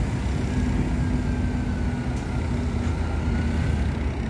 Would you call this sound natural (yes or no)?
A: yes